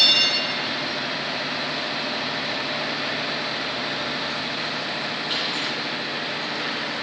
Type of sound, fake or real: real